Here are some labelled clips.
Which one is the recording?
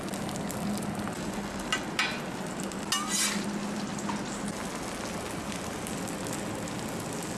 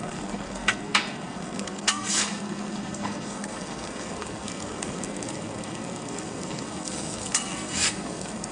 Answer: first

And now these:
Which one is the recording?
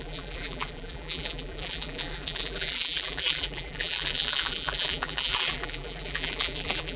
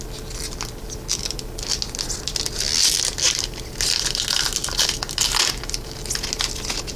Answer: second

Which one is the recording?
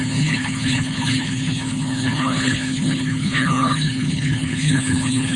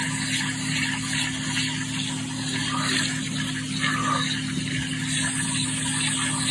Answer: second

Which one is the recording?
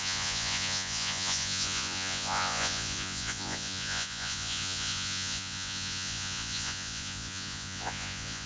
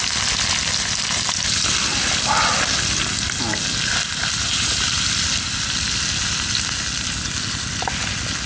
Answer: second